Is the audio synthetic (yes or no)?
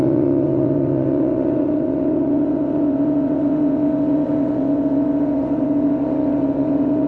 yes